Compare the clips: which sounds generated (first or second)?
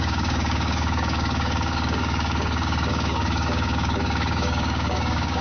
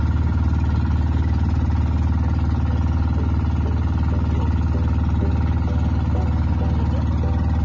first